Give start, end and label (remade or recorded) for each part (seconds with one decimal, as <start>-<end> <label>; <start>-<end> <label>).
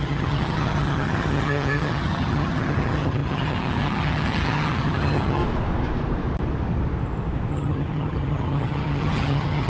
0.0-5.4 remade; 5.4-7.5 recorded; 7.5-9.7 remade